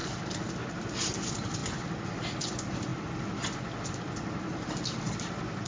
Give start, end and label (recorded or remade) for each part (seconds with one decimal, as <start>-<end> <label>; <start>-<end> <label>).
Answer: 0.0-5.7 recorded